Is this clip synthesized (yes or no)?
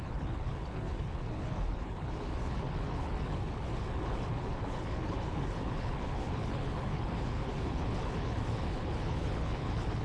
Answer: yes